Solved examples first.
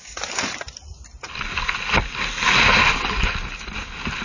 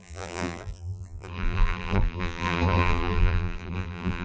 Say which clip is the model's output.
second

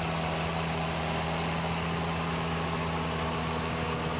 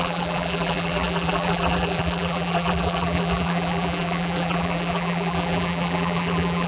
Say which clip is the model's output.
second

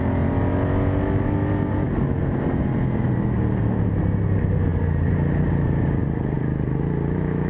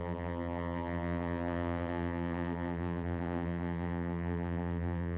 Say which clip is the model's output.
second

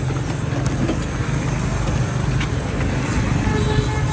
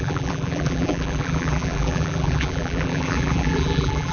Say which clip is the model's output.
second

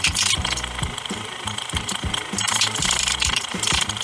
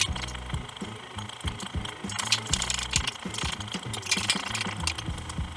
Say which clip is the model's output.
first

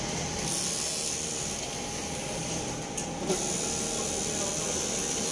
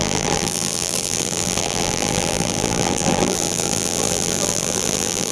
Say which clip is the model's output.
second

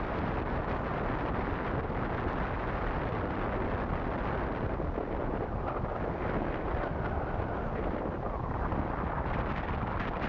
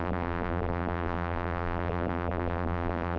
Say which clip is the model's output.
second